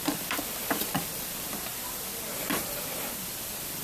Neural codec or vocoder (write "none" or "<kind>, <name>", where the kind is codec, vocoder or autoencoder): vocoder, BigVGAN v2